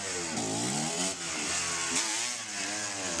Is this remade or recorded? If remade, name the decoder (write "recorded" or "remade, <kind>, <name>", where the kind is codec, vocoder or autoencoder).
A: recorded